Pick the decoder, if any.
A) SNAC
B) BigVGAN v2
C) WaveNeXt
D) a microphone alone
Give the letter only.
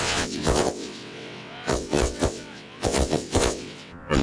C